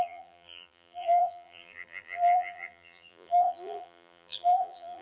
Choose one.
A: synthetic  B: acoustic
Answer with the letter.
A